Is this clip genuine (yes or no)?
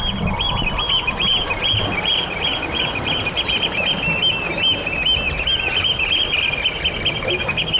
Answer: yes